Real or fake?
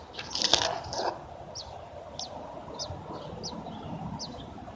real